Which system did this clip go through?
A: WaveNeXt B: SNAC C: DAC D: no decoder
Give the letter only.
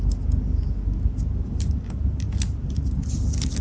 D